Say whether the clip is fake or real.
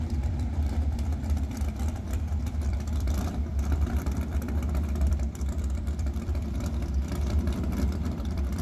fake